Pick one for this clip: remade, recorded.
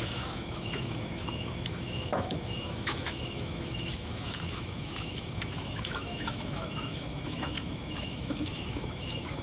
remade